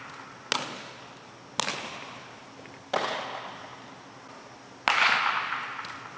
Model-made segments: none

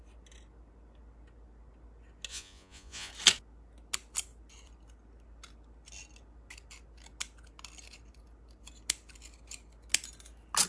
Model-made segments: 2.3-3.1 (vocoder, Vocos)

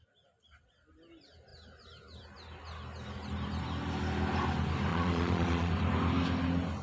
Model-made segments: 4.9-5.7 (vocoder, Vocos)

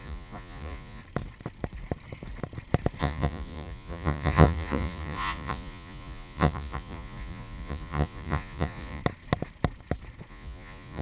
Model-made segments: 0.0-1.0 (vocoder, Vocos); 3.0-9.0; 10.3-11.0

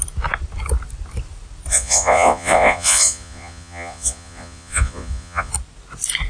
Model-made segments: 1.7-5.5 (vocoder, Vocos)